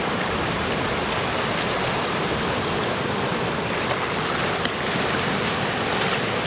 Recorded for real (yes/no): yes